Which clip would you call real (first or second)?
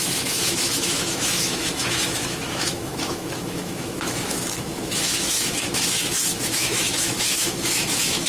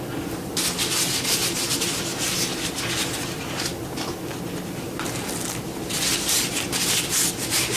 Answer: second